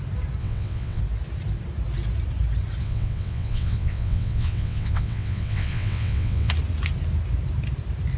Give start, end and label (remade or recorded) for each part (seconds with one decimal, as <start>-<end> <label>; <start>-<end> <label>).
0.0-0.4 recorded; 0.4-1.0 remade; 1.0-2.8 recorded; 2.8-6.5 remade; 6.5-8.2 recorded